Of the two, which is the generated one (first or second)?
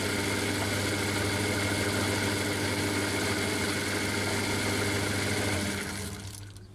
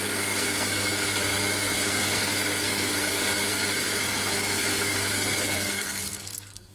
second